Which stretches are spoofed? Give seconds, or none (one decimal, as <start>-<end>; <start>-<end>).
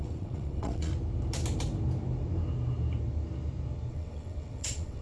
0.0-0.9; 3.9-5.0